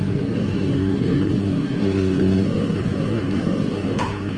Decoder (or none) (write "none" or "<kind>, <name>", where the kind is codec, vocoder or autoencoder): codec, SNAC